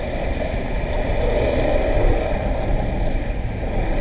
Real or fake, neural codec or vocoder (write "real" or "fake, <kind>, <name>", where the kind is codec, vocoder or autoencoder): real